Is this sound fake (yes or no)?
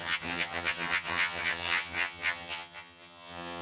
yes